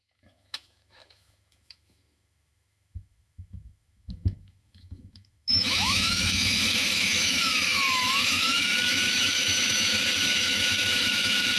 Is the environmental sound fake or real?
fake